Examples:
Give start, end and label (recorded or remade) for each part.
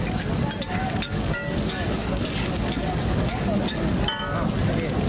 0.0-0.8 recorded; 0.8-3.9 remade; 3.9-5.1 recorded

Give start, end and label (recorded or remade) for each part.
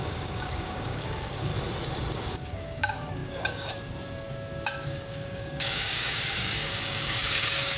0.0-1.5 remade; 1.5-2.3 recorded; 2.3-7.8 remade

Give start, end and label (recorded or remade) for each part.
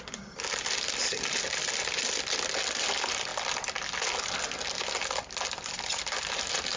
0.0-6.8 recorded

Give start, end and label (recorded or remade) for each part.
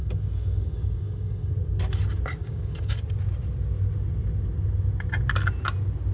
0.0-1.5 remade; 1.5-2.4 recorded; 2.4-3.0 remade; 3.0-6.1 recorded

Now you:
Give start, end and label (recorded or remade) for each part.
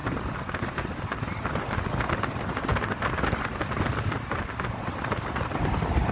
0.0-6.1 recorded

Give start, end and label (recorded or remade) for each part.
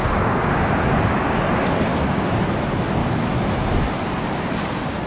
0.0-1.4 remade; 1.4-1.9 recorded; 1.9-2.4 remade; 2.4-5.1 recorded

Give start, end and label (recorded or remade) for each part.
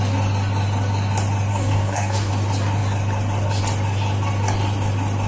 0.0-1.5 recorded; 1.5-2.3 remade; 2.3-5.3 recorded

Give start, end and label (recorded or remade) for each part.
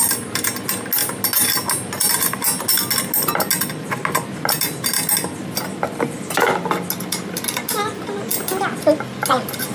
0.0-9.7 recorded